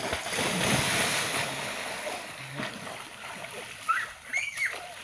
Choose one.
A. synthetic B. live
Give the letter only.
B